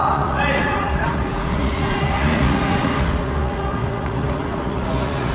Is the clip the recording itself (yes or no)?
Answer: no